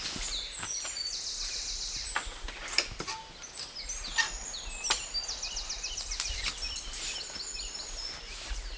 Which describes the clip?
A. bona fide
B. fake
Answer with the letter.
A